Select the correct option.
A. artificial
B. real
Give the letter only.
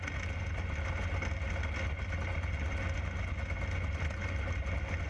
B